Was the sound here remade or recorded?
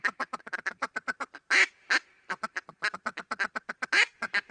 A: recorded